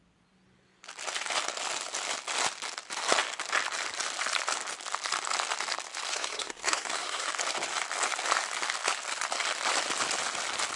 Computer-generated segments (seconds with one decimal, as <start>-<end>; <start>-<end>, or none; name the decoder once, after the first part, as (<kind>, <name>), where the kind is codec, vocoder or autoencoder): 6.1-7.3 (codec, SNAC)